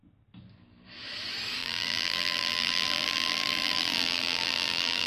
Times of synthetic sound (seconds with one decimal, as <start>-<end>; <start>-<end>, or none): 1.6-5.1